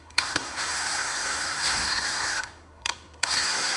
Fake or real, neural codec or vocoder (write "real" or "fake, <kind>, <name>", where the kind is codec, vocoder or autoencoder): fake, codec, SNAC